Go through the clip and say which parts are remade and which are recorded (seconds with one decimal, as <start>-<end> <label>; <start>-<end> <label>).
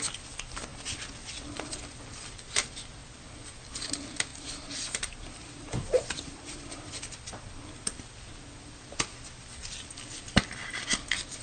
0.0-4.3 recorded; 4.3-6.9 remade; 6.9-11.4 recorded